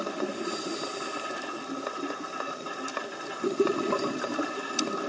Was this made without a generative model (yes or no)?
yes